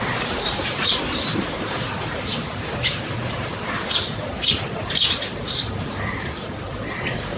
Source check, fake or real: fake